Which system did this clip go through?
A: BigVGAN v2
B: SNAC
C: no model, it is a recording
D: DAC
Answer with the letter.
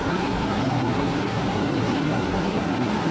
B